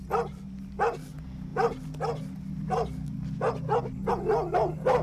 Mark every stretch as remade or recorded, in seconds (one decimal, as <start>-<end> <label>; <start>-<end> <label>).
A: 0.0-5.0 recorded